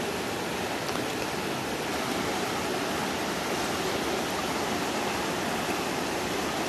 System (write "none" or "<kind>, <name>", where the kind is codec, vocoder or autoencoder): none